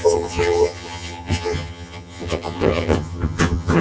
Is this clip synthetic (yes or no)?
yes